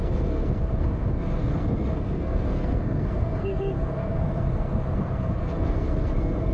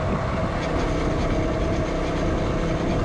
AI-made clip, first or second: first